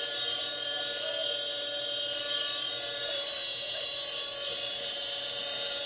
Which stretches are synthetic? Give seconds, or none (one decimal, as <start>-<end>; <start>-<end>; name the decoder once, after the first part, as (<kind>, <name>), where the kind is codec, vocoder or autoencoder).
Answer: 3.0-4.2 (vocoder, BigVGAN v2)